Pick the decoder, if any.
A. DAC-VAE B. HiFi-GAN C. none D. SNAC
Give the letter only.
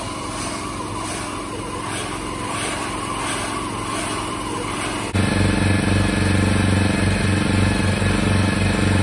C